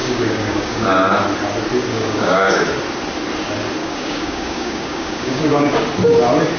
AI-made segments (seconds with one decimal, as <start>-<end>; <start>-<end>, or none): 0.0-0.9; 1.9-2.5; 3.8-5.7

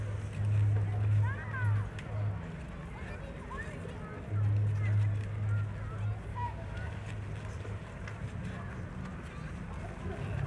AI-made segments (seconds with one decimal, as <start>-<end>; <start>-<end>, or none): 6.3-7.1